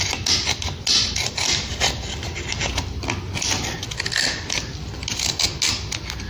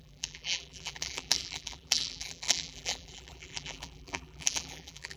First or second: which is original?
first